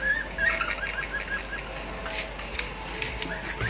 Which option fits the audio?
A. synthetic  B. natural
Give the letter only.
B